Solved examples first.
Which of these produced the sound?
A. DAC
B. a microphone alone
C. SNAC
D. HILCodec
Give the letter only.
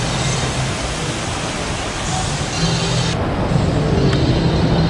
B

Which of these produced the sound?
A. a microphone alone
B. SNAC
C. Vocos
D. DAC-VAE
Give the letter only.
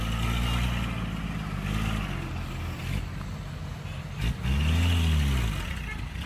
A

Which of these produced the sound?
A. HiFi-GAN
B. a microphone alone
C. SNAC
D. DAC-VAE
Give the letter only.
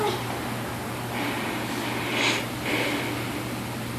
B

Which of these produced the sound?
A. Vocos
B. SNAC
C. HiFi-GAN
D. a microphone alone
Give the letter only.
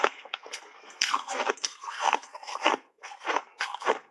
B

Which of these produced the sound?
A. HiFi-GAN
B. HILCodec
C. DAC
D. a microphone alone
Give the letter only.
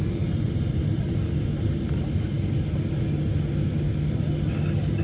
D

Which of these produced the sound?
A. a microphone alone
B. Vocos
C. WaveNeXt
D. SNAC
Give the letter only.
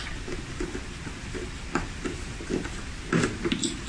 A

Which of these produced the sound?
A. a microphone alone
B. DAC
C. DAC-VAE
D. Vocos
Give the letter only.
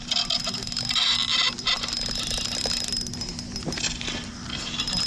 A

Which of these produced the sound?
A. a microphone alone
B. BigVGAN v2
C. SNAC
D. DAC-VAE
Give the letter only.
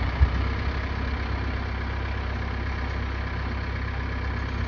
A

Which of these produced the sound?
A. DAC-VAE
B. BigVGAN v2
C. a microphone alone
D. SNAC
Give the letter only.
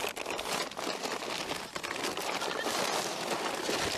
C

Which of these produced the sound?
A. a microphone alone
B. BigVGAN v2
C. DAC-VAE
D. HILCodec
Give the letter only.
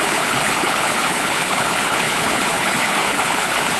D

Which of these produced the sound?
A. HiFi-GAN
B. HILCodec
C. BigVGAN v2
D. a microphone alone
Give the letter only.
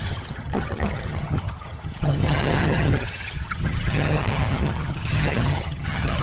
A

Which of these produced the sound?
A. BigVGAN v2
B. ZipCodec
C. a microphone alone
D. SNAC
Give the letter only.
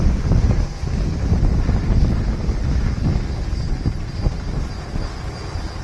C